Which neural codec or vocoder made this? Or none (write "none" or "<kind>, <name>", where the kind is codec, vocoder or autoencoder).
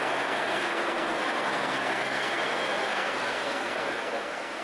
codec, SNAC